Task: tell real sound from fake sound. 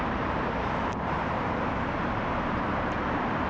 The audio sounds fake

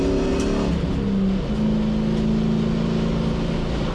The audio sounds real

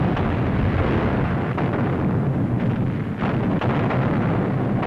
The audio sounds real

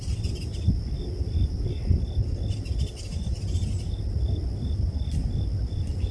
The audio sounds real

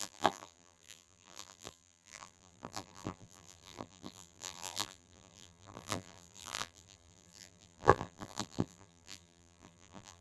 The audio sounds fake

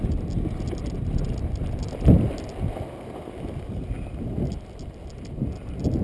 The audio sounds real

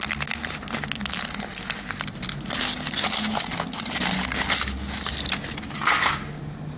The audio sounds real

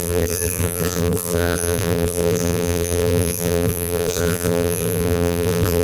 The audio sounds fake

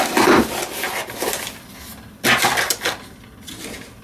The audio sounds real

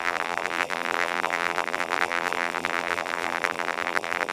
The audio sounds fake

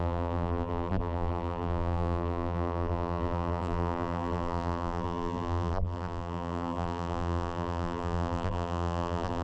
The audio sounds fake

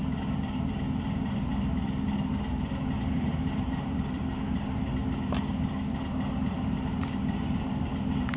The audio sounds fake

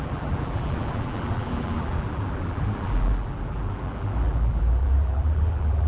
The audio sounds fake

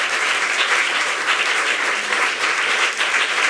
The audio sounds fake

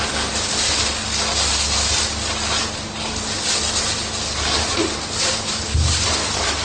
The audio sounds real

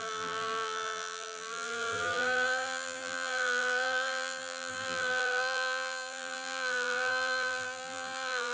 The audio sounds fake